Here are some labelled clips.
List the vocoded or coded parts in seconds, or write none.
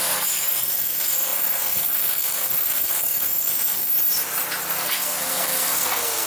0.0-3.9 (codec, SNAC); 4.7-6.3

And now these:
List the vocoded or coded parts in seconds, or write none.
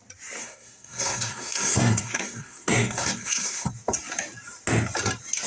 0.4-3.7 (codec, SNAC)